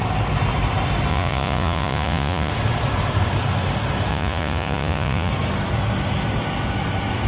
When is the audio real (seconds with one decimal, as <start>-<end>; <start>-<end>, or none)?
0.0-1.1; 2.5-4.1; 5.3-7.3